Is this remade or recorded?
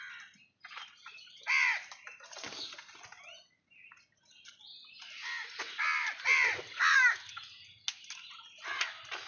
recorded